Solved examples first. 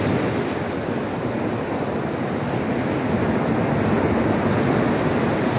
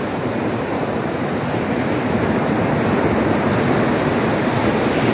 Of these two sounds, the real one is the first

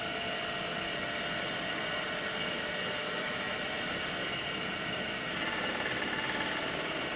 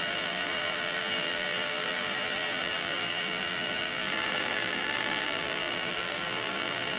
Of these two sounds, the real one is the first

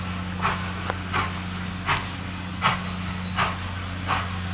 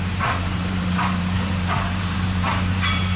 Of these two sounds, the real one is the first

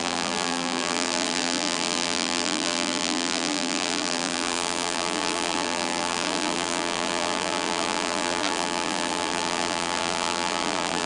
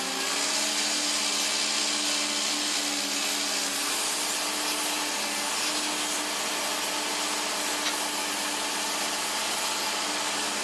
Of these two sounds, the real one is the second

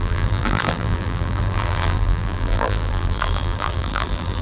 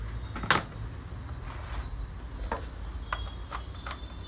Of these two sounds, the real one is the second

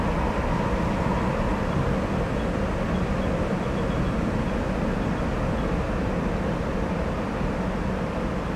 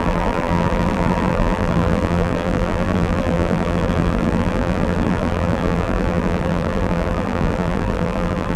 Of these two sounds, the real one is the first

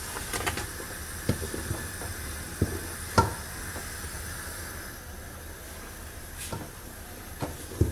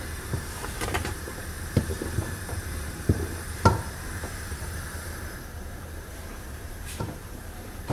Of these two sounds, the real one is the first